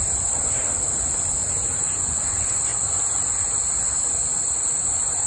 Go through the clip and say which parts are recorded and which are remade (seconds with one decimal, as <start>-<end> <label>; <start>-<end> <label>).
0.0-1.4 recorded; 1.4-2.3 remade; 2.3-5.3 recorded